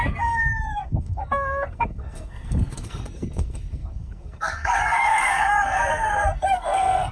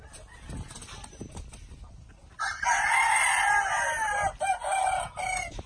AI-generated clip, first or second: first